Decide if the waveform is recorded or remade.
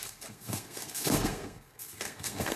remade